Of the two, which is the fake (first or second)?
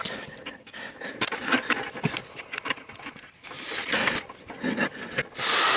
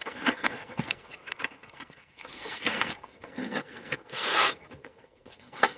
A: second